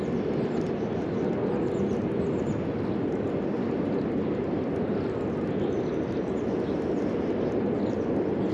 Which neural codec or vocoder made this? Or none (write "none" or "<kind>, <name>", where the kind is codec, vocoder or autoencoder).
none